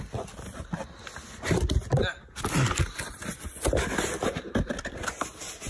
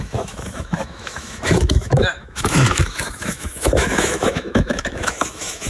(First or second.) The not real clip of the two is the second